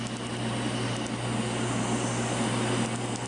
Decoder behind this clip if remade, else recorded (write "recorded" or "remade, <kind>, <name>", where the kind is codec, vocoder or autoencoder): recorded